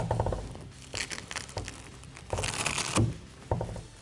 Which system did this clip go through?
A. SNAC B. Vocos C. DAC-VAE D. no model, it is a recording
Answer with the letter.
D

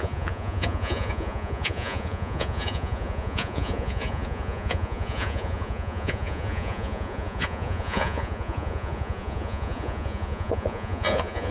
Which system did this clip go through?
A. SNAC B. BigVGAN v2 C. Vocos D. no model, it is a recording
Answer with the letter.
C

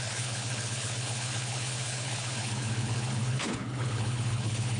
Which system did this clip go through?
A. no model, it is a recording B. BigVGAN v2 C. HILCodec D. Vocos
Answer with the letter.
C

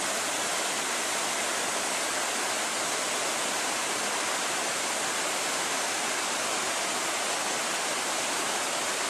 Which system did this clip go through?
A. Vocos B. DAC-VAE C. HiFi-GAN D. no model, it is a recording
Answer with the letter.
D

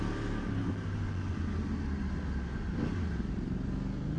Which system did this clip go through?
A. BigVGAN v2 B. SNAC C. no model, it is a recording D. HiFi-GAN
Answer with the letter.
C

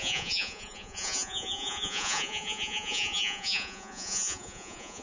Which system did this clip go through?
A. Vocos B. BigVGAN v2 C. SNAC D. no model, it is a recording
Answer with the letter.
A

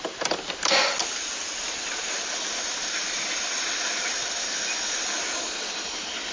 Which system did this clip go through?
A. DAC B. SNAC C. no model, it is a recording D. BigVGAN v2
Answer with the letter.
C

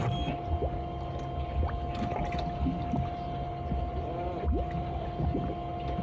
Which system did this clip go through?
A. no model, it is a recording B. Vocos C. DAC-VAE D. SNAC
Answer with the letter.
A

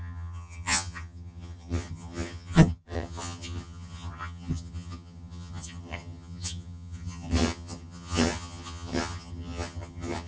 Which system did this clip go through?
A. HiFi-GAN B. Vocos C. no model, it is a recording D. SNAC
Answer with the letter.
A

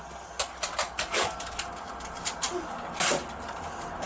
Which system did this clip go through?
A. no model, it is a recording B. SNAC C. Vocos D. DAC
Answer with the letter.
A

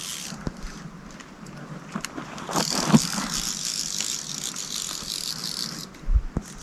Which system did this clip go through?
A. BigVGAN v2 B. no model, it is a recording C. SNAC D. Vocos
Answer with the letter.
B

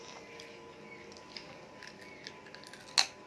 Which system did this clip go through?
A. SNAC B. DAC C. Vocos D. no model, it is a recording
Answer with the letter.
D